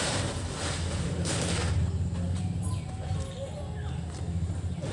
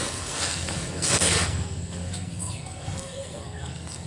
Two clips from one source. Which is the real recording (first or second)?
first